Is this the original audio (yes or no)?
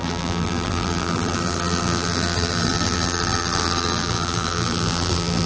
no